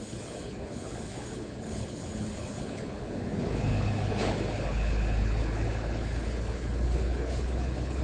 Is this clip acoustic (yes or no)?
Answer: no